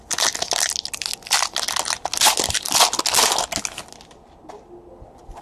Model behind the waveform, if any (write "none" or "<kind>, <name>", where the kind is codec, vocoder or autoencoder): none